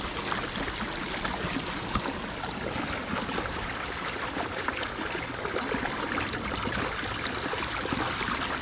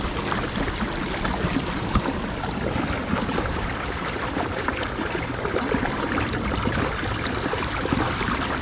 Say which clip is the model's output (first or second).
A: second